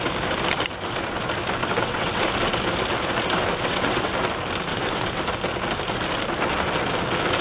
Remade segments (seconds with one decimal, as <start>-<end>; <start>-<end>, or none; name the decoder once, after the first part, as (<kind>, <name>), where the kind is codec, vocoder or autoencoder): 1.6-2.2 (vocoder, WaveNeXt); 3.4-4.1; 4.7-5.2